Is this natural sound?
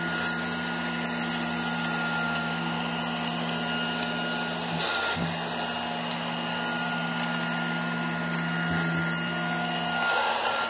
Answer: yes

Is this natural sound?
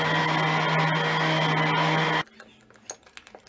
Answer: yes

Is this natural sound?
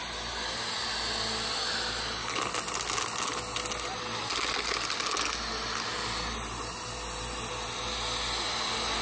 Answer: yes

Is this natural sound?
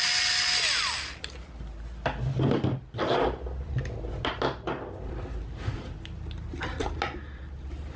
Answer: yes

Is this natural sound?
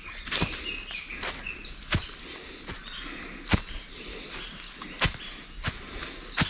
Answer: yes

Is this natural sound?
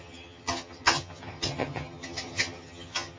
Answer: no